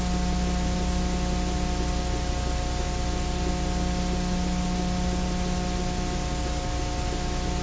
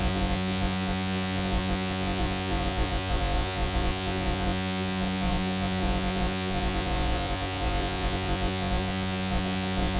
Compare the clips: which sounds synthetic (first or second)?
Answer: second